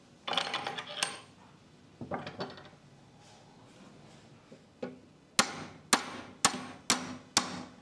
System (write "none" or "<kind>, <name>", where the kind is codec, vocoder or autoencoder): none